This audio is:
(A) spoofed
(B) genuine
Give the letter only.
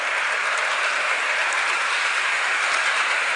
A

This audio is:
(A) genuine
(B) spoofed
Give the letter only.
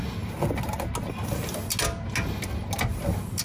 A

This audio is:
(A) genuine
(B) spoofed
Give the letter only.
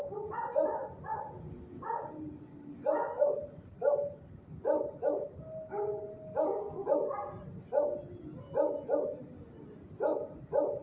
A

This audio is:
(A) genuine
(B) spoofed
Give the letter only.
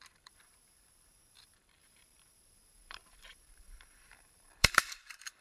B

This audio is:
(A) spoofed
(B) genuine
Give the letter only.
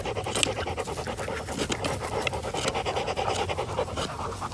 B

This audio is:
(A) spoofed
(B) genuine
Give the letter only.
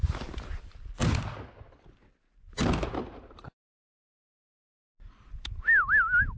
B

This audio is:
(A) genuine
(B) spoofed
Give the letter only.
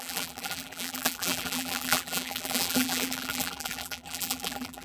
B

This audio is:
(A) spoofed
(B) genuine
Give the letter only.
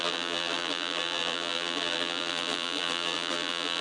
A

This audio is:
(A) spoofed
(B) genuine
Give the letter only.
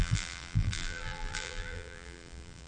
A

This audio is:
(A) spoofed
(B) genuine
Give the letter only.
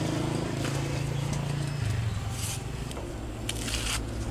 B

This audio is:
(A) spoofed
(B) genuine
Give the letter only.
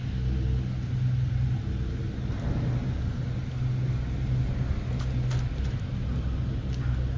B